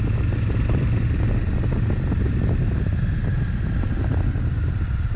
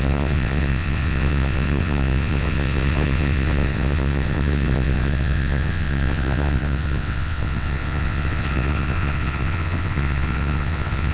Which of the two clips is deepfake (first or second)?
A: second